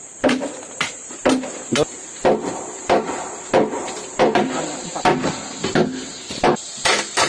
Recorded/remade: remade